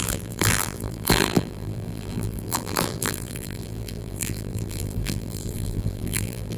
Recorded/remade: remade